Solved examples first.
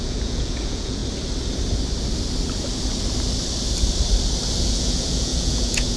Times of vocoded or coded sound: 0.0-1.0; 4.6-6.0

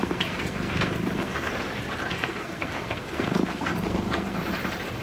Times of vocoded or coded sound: 0.0-1.5; 2.1-4.4

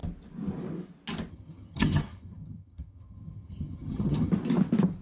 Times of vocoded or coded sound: 1.3-4.3

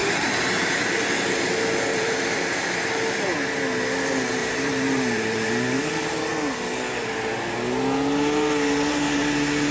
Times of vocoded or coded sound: 0.0-0.9; 1.9-2.5; 4.4-5.5

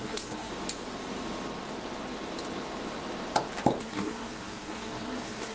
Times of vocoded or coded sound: 0.0-0.5; 3.8-5.5